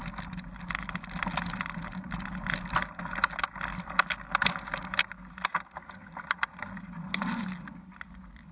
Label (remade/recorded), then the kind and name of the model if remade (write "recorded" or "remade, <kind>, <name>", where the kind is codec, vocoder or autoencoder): recorded